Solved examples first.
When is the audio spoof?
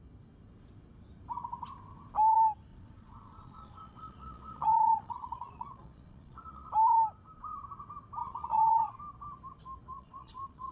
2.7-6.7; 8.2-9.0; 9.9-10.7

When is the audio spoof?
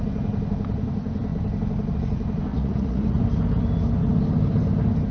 2.5-3.2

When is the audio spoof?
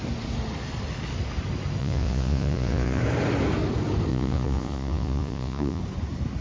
1.8-3.0; 4.1-5.8